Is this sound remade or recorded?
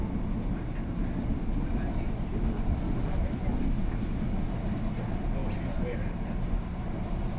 recorded